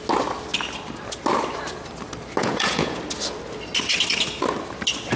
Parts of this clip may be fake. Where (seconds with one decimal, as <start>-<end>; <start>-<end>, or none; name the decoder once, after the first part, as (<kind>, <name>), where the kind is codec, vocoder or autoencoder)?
2.4-3.0 (vocoder, Vocos)